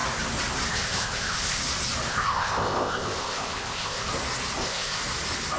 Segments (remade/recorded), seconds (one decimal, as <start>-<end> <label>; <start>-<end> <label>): 0.0-0.7 recorded; 0.7-1.6 remade; 1.6-2.1 recorded; 2.1-4.1 remade; 4.1-4.6 recorded; 4.6-5.0 remade; 5.0-5.6 recorded